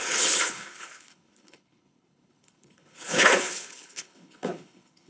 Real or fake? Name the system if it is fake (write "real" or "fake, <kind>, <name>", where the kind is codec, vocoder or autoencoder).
fake, codec, HILCodec